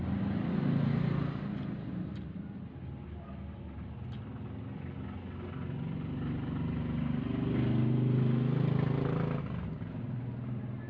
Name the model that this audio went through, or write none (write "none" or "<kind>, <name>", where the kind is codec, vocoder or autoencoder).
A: none